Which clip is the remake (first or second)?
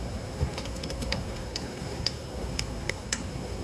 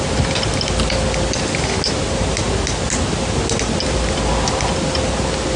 first